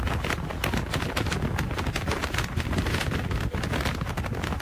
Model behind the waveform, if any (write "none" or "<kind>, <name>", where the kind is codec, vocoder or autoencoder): none